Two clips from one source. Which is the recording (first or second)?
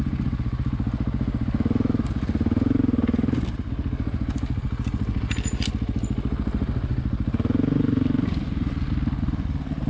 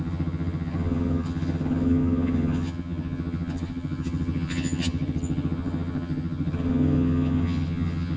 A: first